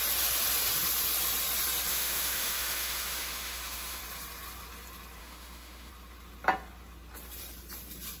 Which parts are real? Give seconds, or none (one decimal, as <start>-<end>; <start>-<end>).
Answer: 0.0-1.9; 4.0-5.2; 5.9-8.2